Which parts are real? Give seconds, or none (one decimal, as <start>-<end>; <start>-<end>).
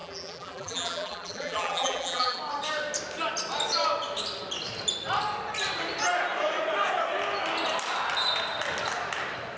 2.4-9.6